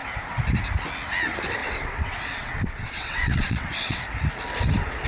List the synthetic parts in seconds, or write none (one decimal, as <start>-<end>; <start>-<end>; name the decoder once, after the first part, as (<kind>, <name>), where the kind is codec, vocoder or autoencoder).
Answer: 1.6-4.0 (vocoder, WaveNeXt)